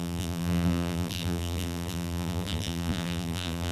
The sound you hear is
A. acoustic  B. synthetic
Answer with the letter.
B